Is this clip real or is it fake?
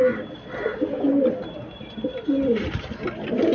real